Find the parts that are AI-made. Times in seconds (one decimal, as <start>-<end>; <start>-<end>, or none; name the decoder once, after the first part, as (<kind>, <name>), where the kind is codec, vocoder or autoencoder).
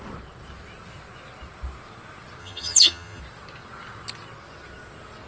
2.4-3.2 (vocoder, HiFi-GAN)